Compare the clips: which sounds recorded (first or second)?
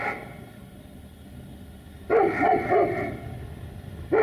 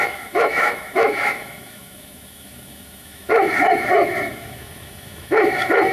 first